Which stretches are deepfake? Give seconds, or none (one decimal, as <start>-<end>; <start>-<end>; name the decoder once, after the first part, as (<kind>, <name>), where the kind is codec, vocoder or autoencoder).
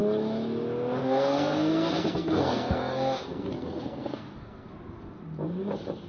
1.0-4.7 (codec, SNAC)